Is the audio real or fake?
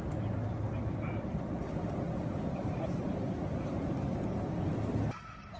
real